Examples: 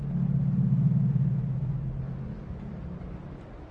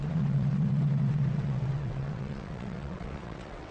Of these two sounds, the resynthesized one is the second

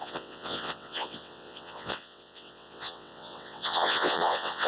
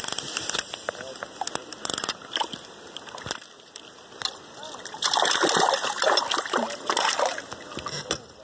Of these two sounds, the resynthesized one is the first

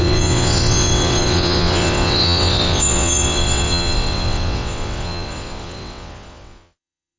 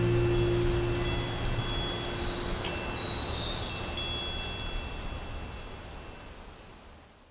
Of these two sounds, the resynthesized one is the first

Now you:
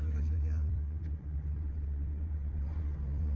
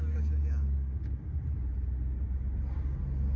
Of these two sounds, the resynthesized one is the first